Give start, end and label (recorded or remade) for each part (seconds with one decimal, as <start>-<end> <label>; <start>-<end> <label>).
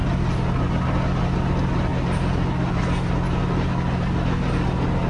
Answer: 0.0-5.1 recorded